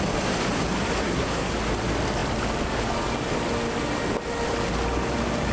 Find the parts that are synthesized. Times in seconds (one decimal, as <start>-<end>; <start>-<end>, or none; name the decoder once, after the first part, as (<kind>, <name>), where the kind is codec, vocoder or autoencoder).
1.0-1.5 (codec, SNAC)